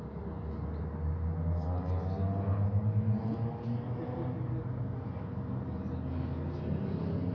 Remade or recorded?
recorded